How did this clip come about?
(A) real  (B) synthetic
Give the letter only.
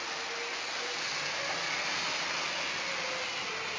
A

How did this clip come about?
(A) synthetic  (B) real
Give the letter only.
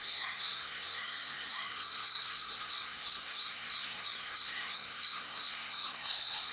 A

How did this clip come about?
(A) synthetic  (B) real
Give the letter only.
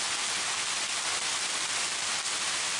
B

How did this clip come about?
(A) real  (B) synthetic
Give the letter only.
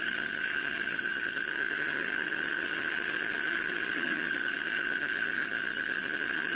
B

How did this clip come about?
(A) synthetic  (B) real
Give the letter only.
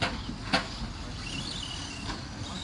B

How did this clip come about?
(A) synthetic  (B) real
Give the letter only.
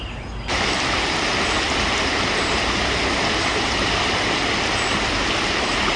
B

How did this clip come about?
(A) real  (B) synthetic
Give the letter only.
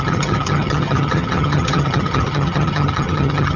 B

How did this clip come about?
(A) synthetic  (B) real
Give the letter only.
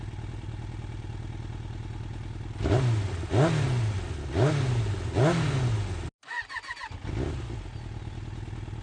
B